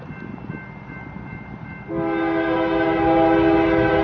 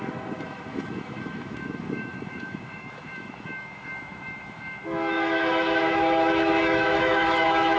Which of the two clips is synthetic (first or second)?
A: second